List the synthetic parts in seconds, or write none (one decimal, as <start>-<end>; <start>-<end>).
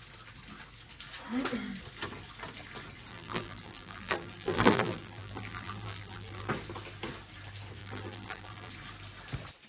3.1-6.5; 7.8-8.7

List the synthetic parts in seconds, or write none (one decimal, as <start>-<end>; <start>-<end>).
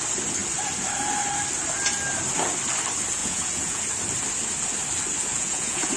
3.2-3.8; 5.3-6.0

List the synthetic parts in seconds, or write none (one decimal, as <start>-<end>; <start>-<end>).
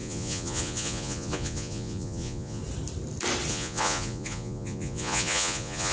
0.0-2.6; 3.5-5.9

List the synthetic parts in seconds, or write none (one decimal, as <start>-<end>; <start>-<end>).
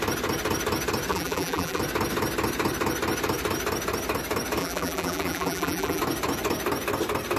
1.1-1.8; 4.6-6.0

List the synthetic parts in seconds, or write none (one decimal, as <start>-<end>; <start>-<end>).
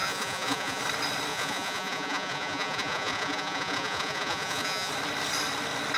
0.0-0.8; 1.3-4.9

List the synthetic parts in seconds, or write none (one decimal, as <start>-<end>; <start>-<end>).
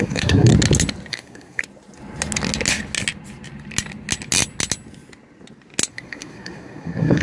0.0-0.5; 1.1-1.6; 5.9-7.2